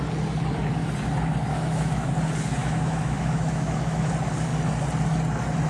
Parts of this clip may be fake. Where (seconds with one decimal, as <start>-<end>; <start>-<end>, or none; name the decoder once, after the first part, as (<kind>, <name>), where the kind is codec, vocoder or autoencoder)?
1.5-2.1 (autoencoder, DAC-VAE); 2.6-4.1